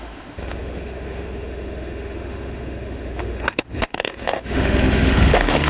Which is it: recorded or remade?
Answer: remade